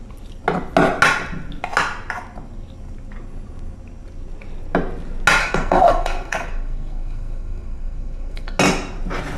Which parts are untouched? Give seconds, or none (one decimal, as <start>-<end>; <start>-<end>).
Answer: 0.0-5.4; 8.6-9.4